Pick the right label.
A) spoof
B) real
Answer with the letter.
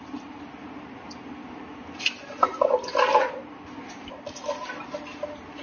B